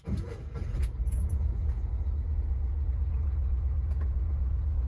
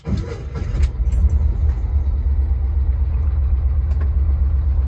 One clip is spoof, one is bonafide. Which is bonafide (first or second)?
second